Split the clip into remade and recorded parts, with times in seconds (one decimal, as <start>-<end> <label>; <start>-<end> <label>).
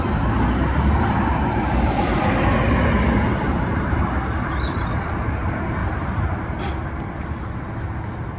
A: 0.0-3.3 recorded; 3.3-4.8 remade; 4.8-5.8 recorded; 5.8-6.6 remade; 6.6-8.4 recorded